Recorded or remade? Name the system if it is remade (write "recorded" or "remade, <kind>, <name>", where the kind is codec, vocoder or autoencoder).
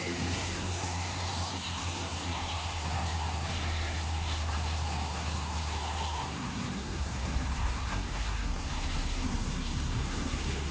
remade, codec, SNAC